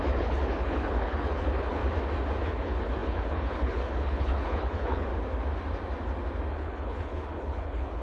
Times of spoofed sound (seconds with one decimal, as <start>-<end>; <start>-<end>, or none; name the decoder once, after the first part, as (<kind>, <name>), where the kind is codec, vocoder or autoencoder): 0.0-1.8 (codec, HILCodec); 2.4-5.1; 6.5-8.0